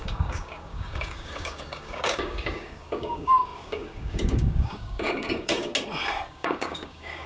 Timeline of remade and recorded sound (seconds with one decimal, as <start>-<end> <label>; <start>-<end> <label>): 0.0-5.7 remade; 5.7-6.3 recorded; 6.3-7.3 remade